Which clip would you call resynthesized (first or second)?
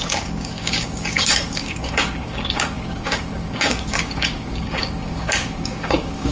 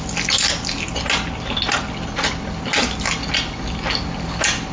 first